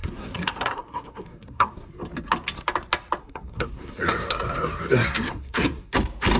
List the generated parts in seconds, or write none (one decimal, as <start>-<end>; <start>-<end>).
0.0-1.9; 3.2-5.9

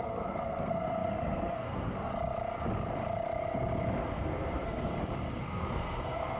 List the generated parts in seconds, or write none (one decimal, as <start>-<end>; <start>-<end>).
0.0-2.1; 4.1-4.9; 5.4-6.4

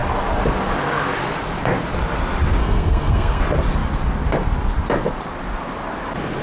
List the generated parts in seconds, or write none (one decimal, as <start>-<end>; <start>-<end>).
2.6-3.4

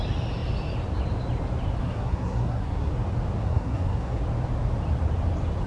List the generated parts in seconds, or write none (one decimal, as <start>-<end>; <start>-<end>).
1.8-2.9; 3.4-4.2

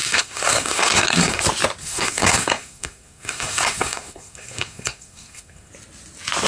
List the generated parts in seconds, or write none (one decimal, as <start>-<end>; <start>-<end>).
0.0-1.4; 1.8-5.7

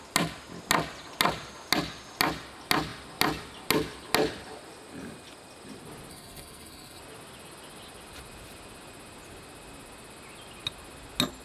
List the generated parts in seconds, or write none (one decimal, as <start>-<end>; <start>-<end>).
6.1-7.0

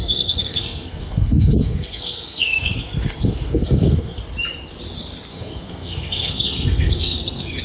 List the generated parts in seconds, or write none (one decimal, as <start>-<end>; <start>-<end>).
0.0-4.2; 5.3-7.6

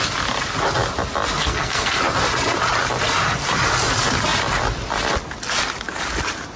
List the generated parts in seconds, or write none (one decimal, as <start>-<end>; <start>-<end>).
1.4-2.0